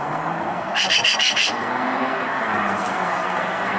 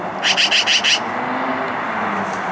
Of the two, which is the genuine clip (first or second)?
second